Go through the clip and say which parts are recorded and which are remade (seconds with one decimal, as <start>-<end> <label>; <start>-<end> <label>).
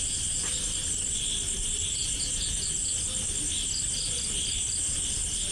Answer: 0.0-1.8 recorded; 1.8-2.8 remade; 2.8-5.5 recorded